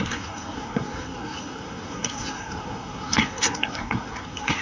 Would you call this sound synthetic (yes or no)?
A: yes